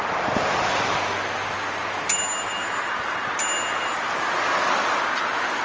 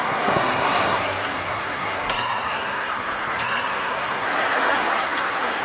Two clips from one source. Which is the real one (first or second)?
first